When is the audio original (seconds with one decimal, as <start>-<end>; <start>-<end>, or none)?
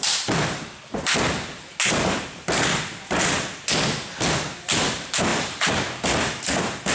0.0-6.9